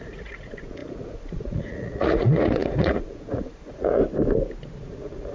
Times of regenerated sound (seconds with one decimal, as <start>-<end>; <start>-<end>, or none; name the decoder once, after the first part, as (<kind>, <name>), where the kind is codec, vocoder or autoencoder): 0.0-4.0 (vocoder, Vocos); 4.8-5.3